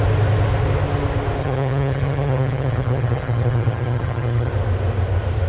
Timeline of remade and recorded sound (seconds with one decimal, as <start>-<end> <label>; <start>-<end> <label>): 0.0-1.4 recorded; 1.4-4.5 remade; 4.5-5.5 recorded